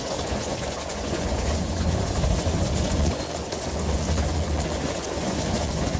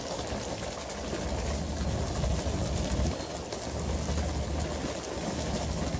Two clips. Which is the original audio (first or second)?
second